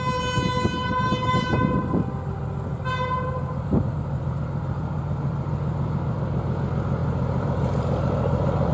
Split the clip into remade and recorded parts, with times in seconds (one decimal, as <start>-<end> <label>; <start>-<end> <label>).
0.0-0.8 recorded; 0.8-1.4 remade; 1.4-2.7 recorded; 2.7-6.5 remade; 6.5-7.0 recorded; 7.0-8.7 remade